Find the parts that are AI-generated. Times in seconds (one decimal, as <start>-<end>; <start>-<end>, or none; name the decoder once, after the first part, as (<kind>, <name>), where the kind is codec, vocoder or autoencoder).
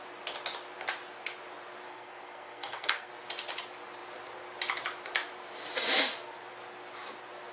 1.9-3.1 (codec, SNAC)